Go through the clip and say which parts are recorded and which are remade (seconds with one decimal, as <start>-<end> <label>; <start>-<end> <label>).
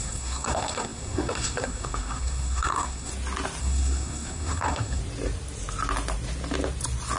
0.0-3.1 remade; 3.1-3.6 recorded; 3.6-5.0 remade; 5.0-7.2 recorded